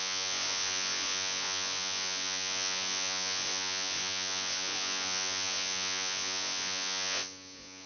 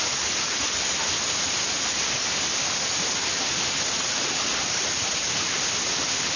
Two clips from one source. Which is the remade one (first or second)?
first